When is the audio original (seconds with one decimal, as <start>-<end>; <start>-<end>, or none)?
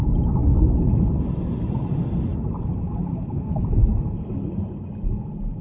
0.0-5.6